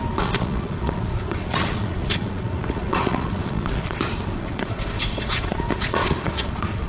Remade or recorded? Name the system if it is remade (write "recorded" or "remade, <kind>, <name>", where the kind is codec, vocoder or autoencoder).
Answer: remade, vocoder, Vocos